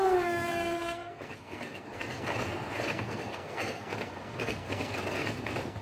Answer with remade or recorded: remade